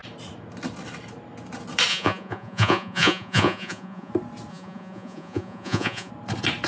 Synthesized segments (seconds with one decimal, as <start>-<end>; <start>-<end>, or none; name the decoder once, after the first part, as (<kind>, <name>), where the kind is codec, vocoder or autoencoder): 1.9-4.1 (vocoder, Vocos); 4.5-6.1